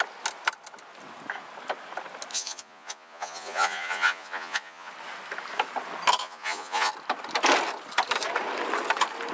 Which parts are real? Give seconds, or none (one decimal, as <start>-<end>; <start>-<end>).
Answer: 0.0-2.3; 4.9-6.2; 6.9-9.3